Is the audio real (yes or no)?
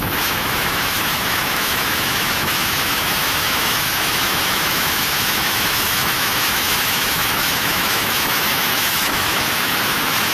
no